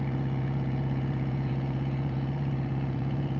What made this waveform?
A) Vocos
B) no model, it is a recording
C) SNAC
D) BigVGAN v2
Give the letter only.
A